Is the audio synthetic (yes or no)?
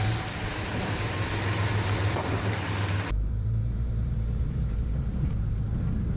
yes